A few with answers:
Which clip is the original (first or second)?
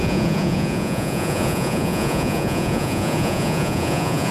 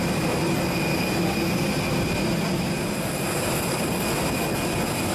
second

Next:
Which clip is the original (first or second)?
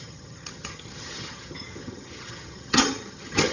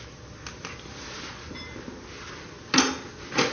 second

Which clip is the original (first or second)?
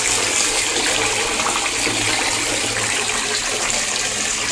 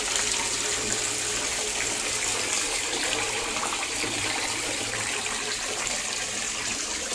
first